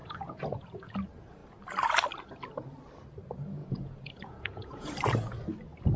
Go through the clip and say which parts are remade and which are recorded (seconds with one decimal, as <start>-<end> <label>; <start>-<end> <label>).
0.0-0.9 remade; 0.9-3.6 recorded; 3.6-4.9 remade; 4.9-6.0 recorded